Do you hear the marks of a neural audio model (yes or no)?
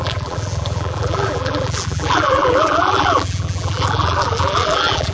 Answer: yes